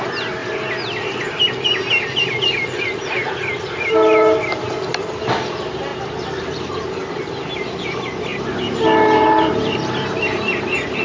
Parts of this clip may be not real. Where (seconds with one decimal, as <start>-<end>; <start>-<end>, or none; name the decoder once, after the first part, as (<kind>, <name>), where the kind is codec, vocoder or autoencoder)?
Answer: 8.3-10.6 (vocoder, BigVGAN v2)